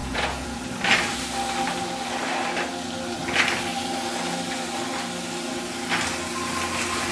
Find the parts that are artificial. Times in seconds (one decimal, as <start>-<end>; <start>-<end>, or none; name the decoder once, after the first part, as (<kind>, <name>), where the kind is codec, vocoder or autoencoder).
0.0-0.6 (vocoder, Vocos)